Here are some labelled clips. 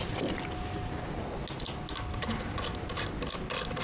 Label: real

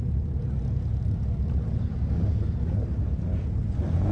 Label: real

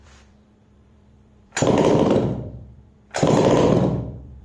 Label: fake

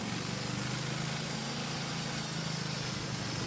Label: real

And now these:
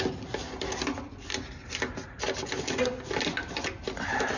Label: real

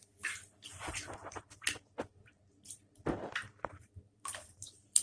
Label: fake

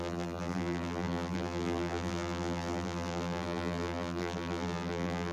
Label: fake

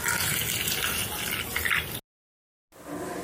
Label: real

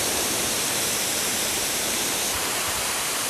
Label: fake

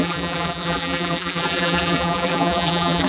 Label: fake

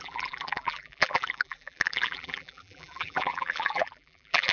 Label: fake